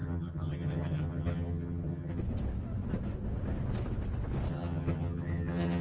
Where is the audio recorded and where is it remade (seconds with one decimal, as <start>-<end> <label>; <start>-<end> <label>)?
0.0-2.2 remade; 2.2-4.5 recorded; 4.5-5.8 remade